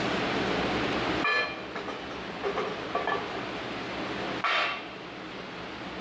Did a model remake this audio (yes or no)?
no